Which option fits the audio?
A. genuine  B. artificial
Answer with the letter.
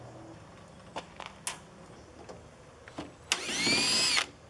A